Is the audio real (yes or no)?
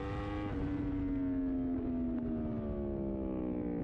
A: yes